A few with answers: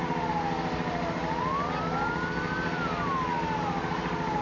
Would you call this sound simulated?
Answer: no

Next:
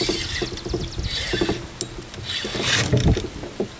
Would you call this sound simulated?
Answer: no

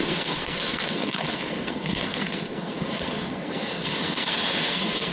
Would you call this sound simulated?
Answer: yes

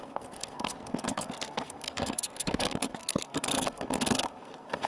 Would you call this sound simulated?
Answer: yes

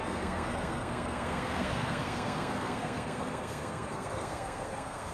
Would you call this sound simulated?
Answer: yes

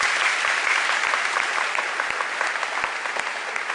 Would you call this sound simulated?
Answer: no